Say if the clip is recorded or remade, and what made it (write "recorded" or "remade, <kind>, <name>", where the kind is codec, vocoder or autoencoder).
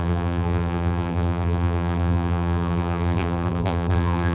remade, vocoder, BigVGAN v2